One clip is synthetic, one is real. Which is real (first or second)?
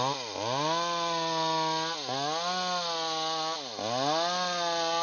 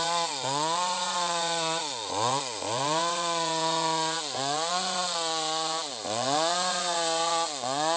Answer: first